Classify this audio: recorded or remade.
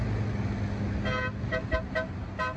recorded